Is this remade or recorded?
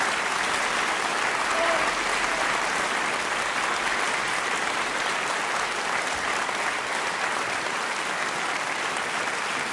recorded